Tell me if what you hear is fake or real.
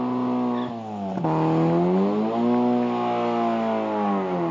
real